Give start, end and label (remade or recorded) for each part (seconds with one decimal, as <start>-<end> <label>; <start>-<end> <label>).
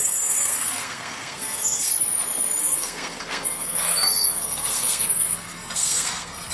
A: 0.0-1.9 remade; 1.9-2.6 recorded; 2.6-6.5 remade